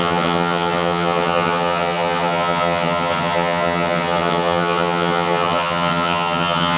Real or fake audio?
fake